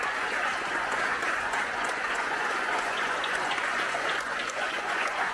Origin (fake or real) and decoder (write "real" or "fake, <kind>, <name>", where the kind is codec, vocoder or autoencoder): fake, vocoder, Vocos